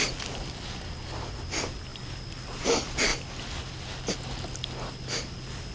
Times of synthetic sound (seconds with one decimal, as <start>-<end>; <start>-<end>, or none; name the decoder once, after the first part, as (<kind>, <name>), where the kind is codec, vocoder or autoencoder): none